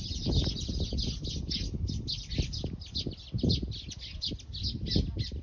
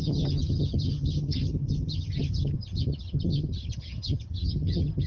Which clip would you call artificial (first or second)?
second